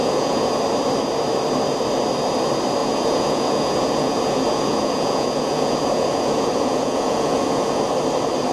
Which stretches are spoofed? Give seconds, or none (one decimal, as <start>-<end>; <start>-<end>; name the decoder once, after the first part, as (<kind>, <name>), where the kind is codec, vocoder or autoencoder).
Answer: 0.0-0.6 (vocoder, Vocos); 2.8-7.9